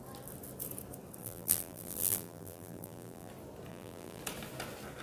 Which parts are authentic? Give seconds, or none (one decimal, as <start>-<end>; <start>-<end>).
0.0-1.2; 3.3-3.7; 4.2-5.0